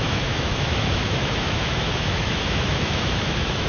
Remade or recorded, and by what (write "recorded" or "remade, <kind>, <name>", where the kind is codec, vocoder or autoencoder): remade, autoencoder, DAC-VAE